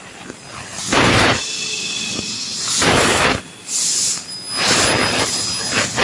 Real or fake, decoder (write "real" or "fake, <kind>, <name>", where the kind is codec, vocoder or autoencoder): real